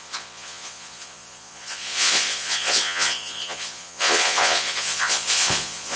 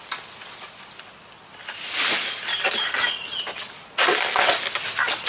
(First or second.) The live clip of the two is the second